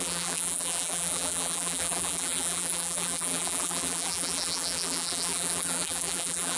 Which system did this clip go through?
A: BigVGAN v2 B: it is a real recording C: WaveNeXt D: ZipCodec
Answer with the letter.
A